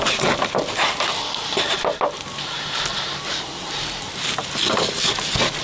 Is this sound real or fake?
real